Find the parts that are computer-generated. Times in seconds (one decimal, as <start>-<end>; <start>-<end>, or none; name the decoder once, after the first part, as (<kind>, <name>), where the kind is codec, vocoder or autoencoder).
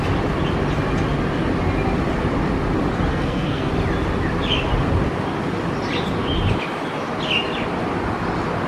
3.1-3.7 (codec, SNAC)